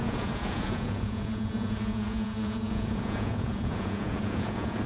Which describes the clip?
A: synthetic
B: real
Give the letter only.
A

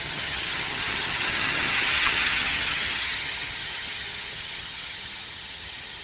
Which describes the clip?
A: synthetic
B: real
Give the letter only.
A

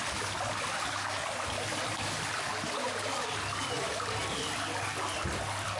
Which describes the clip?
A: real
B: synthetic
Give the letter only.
A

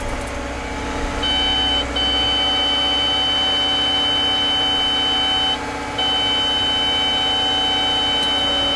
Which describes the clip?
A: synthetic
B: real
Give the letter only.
B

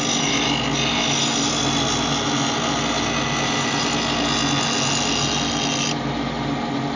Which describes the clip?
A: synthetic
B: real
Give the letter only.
B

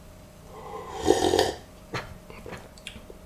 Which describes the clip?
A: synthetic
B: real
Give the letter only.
B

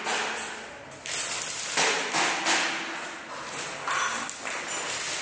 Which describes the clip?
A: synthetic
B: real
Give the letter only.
B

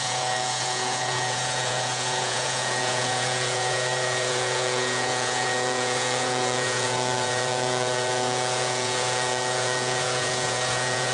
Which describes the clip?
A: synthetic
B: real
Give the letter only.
A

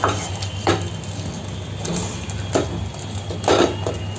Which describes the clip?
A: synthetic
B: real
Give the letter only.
B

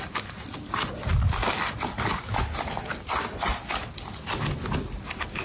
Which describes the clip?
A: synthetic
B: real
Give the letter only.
B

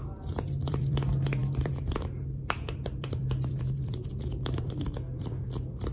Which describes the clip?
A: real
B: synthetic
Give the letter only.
B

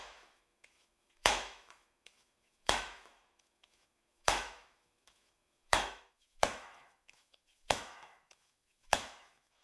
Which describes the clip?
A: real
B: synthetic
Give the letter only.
B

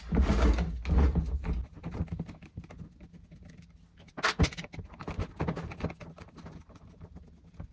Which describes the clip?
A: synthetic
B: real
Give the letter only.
B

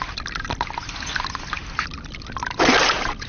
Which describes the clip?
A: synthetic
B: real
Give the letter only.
B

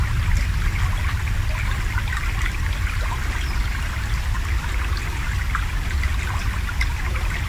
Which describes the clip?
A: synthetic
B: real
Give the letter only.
B